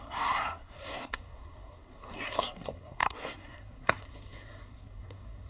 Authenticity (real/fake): fake